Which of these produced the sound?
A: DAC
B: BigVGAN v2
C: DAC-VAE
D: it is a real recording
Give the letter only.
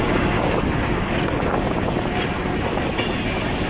D